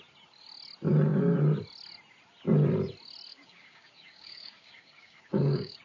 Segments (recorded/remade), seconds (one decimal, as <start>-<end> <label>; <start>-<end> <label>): 0.0-3.3 recorded; 3.3-5.8 remade